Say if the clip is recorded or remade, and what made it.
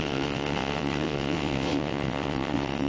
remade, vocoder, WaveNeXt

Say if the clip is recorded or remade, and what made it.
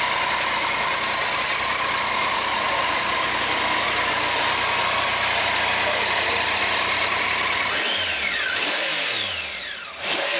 recorded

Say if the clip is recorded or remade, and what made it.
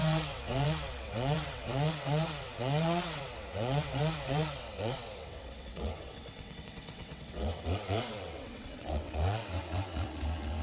remade, vocoder, WaveNeXt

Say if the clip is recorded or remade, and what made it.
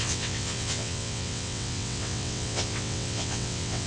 remade, vocoder, WaveNeXt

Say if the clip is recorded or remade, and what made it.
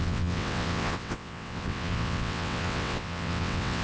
remade, vocoder, WaveNeXt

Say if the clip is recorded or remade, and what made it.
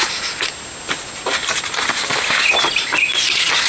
recorded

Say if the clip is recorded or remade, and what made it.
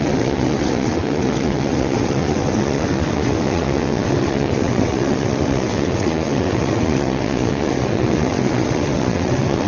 remade, vocoder, WaveNeXt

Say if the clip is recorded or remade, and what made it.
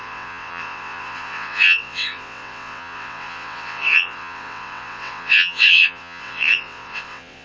remade, vocoder, WaveNeXt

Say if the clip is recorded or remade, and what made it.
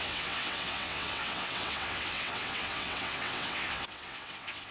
remade, vocoder, WaveNeXt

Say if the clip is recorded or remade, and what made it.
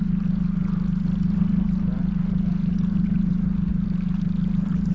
recorded